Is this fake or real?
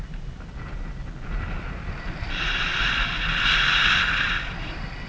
real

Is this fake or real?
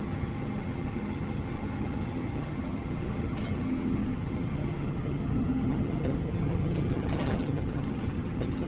fake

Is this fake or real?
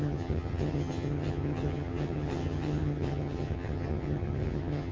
fake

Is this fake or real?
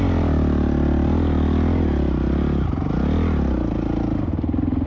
real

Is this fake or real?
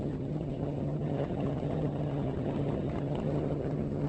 fake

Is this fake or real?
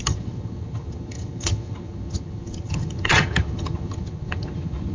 fake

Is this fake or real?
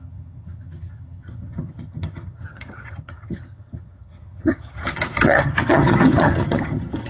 fake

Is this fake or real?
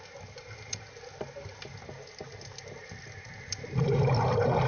real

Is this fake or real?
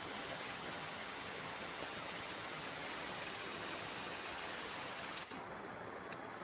fake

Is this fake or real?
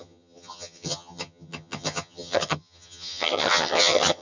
fake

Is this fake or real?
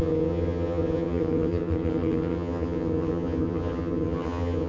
fake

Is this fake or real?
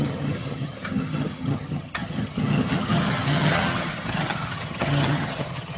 fake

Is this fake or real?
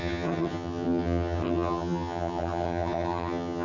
fake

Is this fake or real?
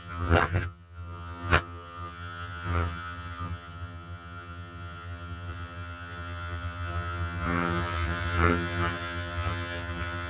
fake